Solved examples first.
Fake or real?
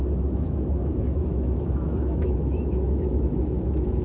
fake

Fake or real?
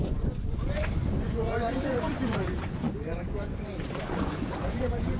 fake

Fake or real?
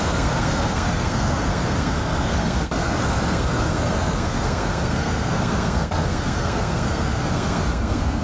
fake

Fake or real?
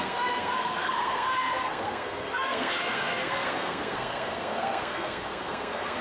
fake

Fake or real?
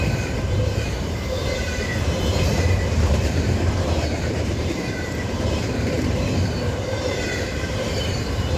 fake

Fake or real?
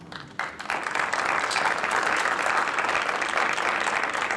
real